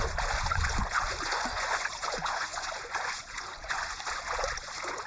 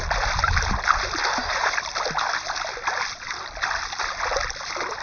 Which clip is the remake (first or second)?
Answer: first